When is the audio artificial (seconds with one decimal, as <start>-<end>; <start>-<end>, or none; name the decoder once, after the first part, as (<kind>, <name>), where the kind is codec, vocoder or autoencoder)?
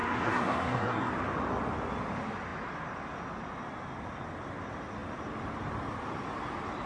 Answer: 0.0-1.1 (codec, SNAC)